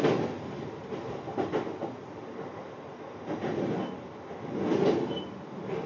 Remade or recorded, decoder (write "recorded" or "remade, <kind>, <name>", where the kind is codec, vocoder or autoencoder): recorded